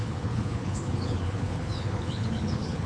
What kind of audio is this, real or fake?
fake